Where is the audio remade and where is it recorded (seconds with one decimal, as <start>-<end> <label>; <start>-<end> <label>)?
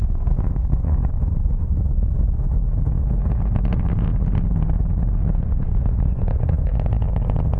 0.0-2.6 remade; 2.6-5.4 recorded; 5.4-6.7 remade; 6.7-7.6 recorded